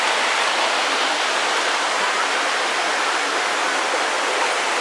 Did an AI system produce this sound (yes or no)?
no